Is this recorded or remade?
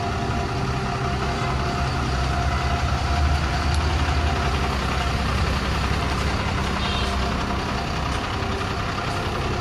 recorded